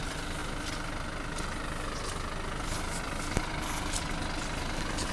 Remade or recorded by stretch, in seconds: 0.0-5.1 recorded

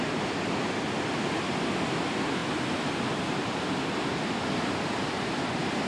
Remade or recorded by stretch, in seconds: 0.0-5.9 recorded

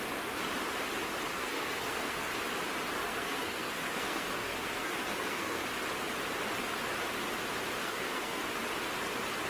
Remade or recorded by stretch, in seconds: 0.0-1.3 recorded; 1.3-2.3 remade; 2.3-3.0 recorded; 3.0-5.6 remade; 5.6-7.8 recorded; 7.8-8.4 remade; 8.4-9.5 recorded

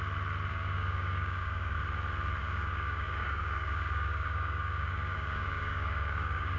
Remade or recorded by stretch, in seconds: 0.0-0.5 recorded; 0.5-1.8 remade; 1.8-2.4 recorded; 2.4-6.6 remade

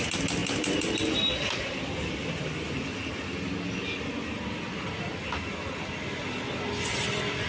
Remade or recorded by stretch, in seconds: 0.0-7.5 recorded

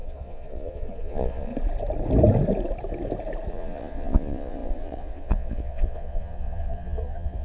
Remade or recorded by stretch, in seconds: 0.0-1.5 remade; 1.5-3.5 recorded; 3.5-7.4 remade

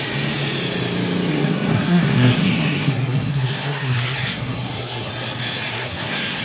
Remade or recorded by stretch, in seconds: 0.0-1.3 recorded; 1.3-5.1 remade; 5.1-5.7 recorded; 5.7-6.4 remade